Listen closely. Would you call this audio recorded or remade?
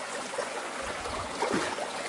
remade